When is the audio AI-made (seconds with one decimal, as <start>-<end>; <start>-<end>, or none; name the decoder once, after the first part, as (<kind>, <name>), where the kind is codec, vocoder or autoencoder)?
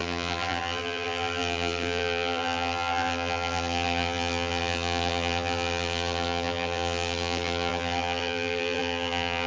0.0-9.5 (vocoder, BigVGAN v2)